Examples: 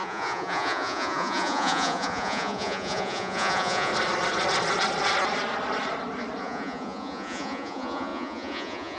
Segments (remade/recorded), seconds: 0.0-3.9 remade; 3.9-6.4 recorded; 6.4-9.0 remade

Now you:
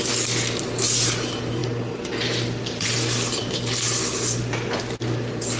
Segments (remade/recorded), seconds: 0.0-5.6 recorded

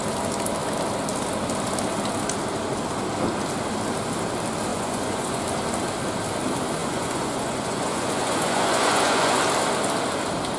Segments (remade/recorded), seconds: 0.0-4.7 recorded; 4.7-5.4 remade; 5.4-6.8 recorded; 6.8-9.4 remade; 9.4-10.6 recorded

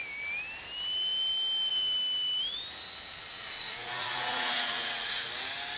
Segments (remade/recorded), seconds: 0.0-3.3 recorded; 3.3-5.3 remade; 5.3-5.8 recorded

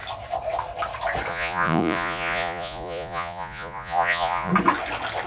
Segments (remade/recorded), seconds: 0.0-1.3 recorded; 1.3-4.5 remade; 4.5-5.3 recorded